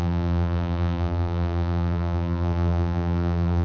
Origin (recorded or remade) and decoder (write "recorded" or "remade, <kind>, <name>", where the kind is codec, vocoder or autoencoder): remade, vocoder, BigVGAN v2